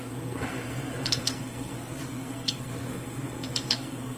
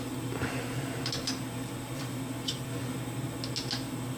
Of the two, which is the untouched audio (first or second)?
second